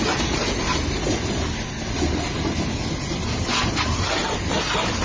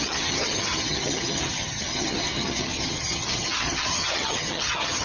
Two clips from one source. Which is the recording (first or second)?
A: first